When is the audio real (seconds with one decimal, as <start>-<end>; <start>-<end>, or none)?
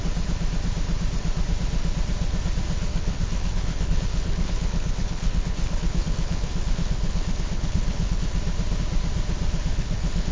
0.0-2.9; 8.2-9.7